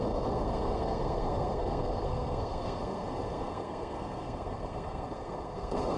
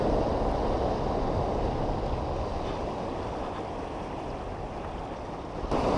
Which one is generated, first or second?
first